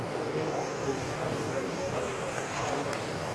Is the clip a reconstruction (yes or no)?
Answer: yes